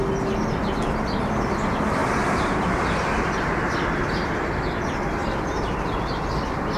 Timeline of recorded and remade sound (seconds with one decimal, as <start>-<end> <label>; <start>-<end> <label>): 0.0-6.8 recorded